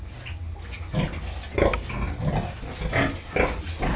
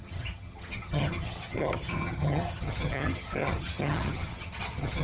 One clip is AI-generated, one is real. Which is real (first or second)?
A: first